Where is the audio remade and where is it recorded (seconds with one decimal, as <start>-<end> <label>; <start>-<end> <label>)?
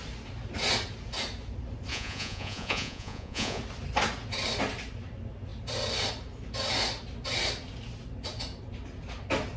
0.0-1.9 recorded; 1.9-3.6 remade; 3.6-9.6 recorded